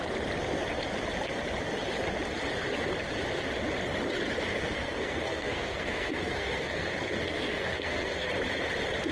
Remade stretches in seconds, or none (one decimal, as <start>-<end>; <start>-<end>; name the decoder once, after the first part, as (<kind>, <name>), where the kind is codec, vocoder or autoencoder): 4.5-8.3 (codec, SNAC)